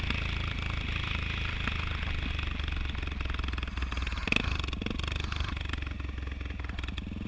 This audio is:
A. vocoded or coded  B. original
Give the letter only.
B